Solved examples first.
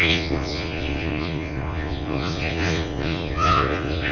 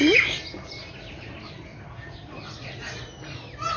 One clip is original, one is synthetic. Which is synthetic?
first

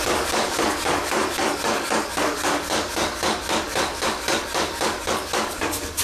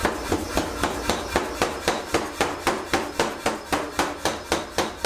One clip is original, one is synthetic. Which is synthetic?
first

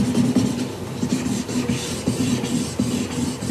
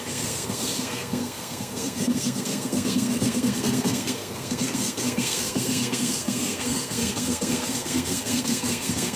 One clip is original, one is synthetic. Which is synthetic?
second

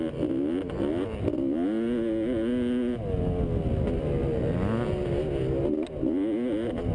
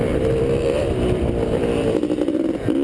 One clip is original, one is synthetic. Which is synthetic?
second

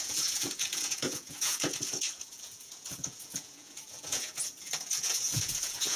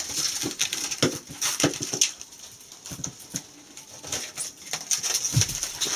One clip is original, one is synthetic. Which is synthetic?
first